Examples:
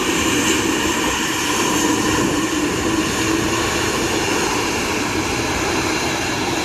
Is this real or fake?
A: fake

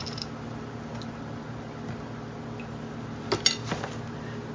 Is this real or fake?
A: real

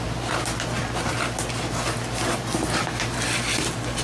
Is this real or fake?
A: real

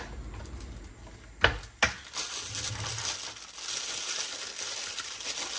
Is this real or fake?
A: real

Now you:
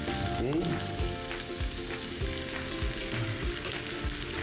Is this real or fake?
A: real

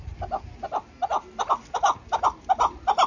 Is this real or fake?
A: real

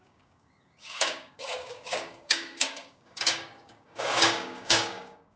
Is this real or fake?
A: fake